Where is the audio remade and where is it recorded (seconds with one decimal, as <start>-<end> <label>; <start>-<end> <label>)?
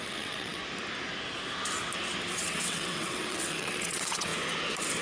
0.0-0.6 remade; 0.6-2.3 recorded; 2.3-4.3 remade; 4.3-5.0 recorded